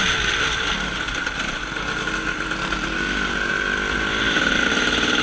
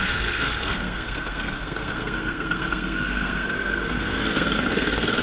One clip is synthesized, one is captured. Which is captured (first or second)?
first